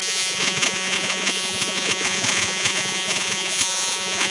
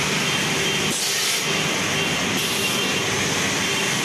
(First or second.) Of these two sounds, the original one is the second